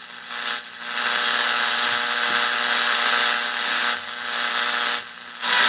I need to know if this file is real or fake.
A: real